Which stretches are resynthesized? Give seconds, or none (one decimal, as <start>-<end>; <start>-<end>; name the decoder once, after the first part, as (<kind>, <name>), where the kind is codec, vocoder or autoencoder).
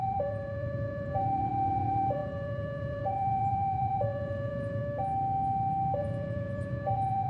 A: 0.0-4.8 (vocoder, Vocos); 6.0-7.3